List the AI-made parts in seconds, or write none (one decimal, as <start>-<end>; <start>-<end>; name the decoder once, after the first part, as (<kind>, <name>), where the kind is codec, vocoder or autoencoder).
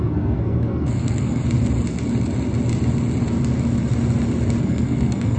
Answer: 0.0-1.4 (codec, SNAC); 4.6-5.4